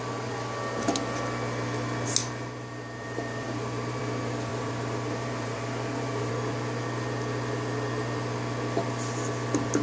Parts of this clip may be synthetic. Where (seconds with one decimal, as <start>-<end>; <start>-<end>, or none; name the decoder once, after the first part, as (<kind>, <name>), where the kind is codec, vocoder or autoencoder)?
2.2-4.0 (vocoder, BigVGAN v2); 4.5-6.3